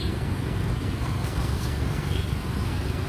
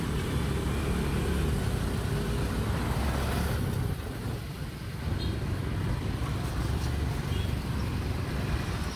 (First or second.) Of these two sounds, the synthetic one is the first